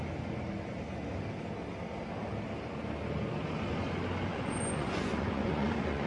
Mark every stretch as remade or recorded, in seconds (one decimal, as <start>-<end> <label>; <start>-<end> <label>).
0.0-4.3 recorded; 4.3-6.1 remade